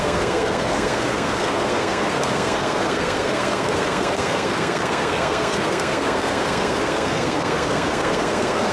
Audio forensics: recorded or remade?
remade